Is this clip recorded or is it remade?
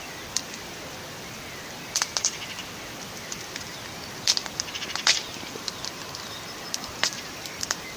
remade